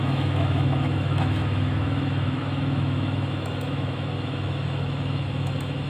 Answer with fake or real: fake